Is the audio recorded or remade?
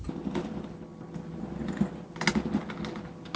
recorded